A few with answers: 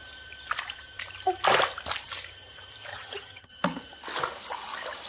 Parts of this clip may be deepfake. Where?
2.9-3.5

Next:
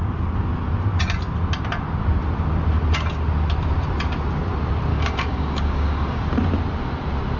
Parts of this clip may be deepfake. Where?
4.9-6.2

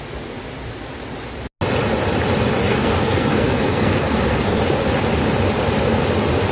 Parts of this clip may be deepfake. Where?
2.7-4.6

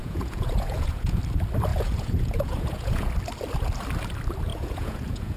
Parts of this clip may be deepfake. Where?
0.0-1.2; 1.7-3.1; 4.5-5.4

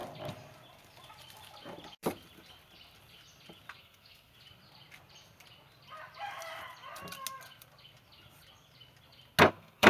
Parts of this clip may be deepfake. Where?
3.8-4.3; 9.5-9.9

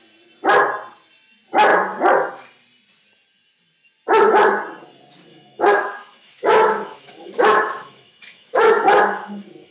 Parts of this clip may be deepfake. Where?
5.3-9.7

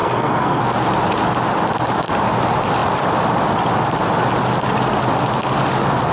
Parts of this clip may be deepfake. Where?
0.0-0.6

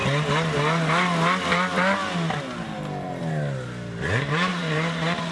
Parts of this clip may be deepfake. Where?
4.5-5.3